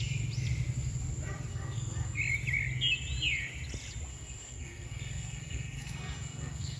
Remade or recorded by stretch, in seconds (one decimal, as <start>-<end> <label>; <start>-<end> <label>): 0.0-1.5 recorded; 1.5-2.2 remade; 2.2-4.1 recorded; 4.1-6.8 remade